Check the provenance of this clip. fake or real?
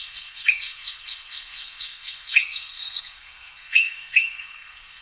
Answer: fake